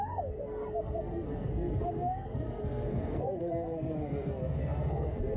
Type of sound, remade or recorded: remade